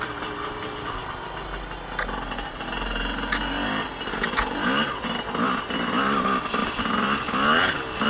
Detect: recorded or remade recorded